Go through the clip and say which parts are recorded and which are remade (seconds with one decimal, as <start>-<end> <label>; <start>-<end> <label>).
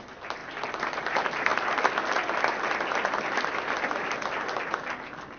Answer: 0.0-5.4 recorded